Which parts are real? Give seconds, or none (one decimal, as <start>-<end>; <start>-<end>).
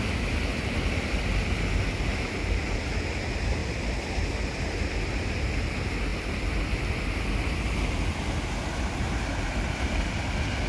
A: 0.0-10.7